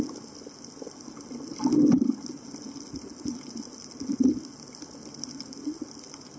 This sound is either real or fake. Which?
real